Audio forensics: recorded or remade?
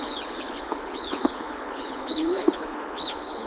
remade